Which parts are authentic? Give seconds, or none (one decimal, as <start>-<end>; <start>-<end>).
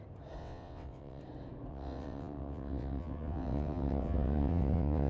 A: 0.0-0.4; 1.2-1.7